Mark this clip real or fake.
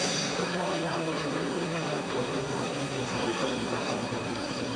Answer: fake